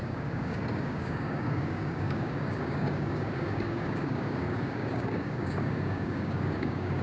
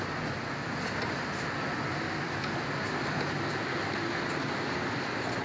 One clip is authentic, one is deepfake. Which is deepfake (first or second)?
first